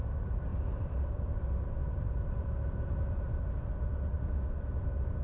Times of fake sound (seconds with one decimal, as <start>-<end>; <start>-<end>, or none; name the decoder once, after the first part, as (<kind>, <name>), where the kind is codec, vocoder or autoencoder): 0.5-1.2 (vocoder, BigVGAN v2); 1.8-3.7